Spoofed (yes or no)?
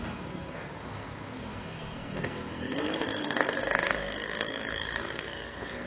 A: yes